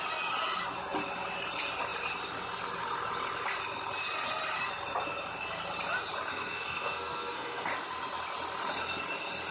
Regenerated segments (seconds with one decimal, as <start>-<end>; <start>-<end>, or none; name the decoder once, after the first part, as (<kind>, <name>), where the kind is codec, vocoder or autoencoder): 6.3-7.7 (codec, SNAC)

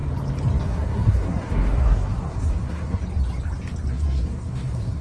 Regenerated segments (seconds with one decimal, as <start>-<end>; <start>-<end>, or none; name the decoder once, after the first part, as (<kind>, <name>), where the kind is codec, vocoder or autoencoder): 0.6-3.0 (codec, SNAC); 3.9-5.0

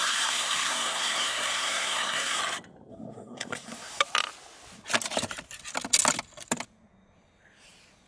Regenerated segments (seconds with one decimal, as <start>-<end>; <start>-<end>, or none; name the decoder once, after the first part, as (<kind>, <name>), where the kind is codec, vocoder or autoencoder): 0.0-2.4 (codec, SNAC); 2.9-4.0

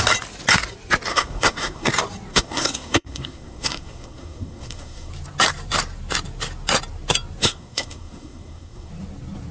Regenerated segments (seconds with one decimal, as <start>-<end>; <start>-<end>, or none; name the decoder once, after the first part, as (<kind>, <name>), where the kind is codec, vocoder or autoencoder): 1.1-1.9 (codec, SNAC); 2.3-5.1; 7.4-8.9